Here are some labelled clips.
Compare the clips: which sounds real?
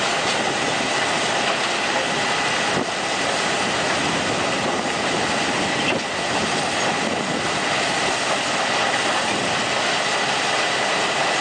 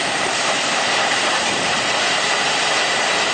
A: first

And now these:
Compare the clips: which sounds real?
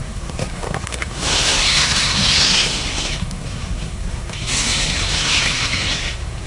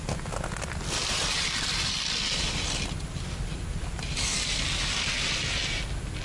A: second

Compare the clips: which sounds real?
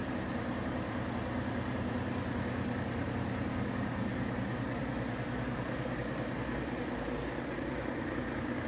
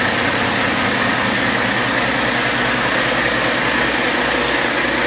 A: second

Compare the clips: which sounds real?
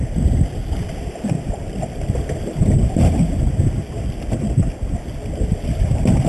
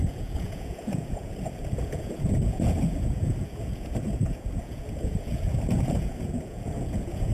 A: first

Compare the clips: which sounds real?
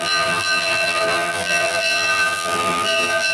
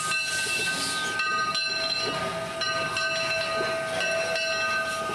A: second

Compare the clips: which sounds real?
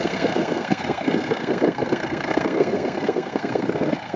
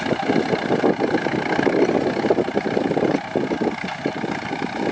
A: second